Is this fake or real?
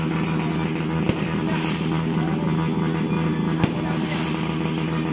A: real